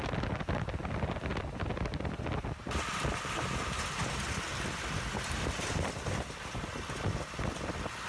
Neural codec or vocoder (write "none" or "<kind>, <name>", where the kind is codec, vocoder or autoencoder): none